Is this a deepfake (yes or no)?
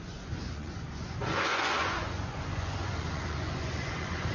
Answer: yes